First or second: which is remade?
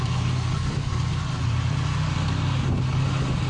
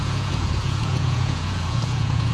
second